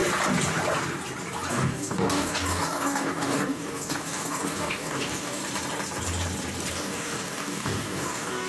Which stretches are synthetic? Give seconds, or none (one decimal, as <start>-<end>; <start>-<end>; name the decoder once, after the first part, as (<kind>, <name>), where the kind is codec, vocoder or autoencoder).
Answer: 1.5-5.4 (codec, DAC); 6.7-8.5